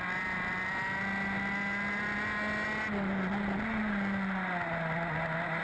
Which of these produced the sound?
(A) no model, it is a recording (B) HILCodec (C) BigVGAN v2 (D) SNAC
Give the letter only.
A